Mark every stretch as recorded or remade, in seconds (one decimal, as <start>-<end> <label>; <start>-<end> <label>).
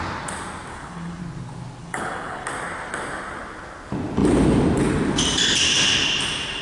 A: 0.0-0.7 recorded; 0.7-1.2 remade; 1.2-1.8 recorded; 1.8-2.5 remade; 2.5-6.6 recorded